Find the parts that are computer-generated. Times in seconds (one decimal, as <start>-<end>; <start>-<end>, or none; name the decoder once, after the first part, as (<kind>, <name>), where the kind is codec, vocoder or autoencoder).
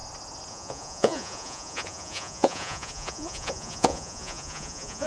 0.5-5.1 (vocoder, Vocos)